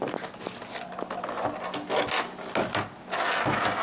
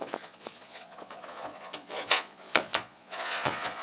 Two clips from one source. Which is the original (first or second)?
first